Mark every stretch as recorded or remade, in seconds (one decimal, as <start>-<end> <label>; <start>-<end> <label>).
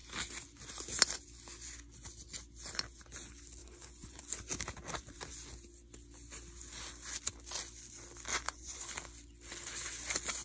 0.0-3.6 recorded; 3.6-4.2 remade; 4.2-8.3 recorded; 8.3-8.8 remade; 8.8-10.4 recorded